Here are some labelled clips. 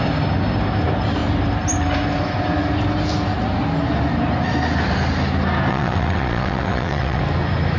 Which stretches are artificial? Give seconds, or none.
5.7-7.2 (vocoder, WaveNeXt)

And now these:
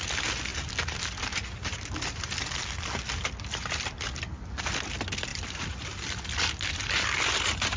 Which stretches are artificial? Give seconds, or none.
none

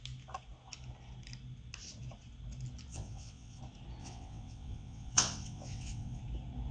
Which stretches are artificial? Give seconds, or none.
2.9-3.6 (vocoder, WaveNeXt); 4.0-6.2

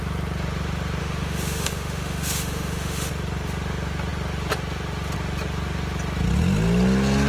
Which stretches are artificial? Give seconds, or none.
1.0-3.1 (autoencoder, DAC-VAE)

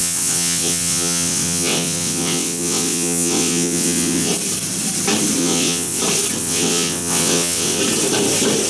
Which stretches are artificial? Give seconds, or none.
0.0-4.3 (vocoder, WaveNeXt); 5.4-6.0; 6.4-7.8

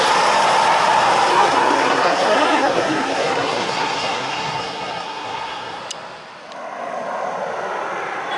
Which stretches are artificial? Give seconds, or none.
1.3-5.8 (codec, SNAC)

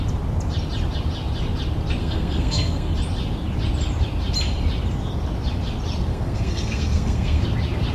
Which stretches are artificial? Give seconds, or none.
2.0-2.9 (codec, SNAC); 6.1-7.4